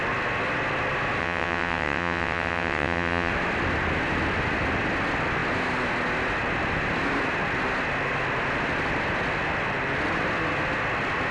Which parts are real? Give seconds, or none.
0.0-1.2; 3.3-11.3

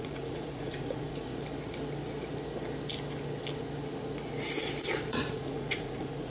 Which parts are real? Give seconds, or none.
1.3-5.1

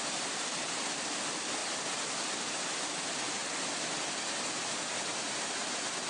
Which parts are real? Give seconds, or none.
0.0-6.1

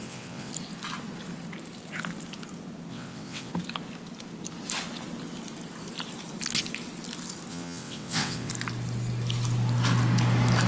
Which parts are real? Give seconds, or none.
0.5-2.9; 3.5-7.5; 8.5-10.7

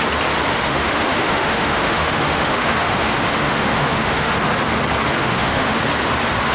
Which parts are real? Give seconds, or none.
0.0-0.5; 4.4-5.2; 5.8-6.5

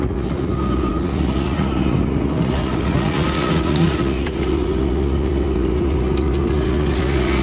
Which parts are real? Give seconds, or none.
none

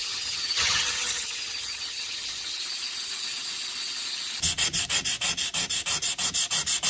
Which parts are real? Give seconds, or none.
2.6-6.9

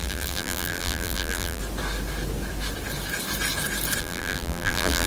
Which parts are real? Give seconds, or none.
1.6-4.0